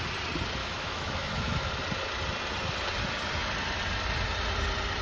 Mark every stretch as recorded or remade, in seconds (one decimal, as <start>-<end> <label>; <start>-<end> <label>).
0.0-0.6 recorded; 0.6-1.7 remade; 1.7-5.0 recorded